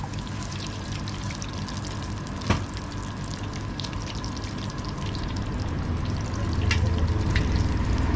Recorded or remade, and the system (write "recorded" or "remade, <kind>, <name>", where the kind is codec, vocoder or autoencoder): recorded